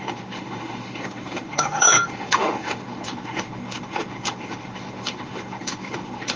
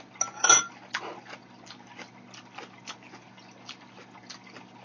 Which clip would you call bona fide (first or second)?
second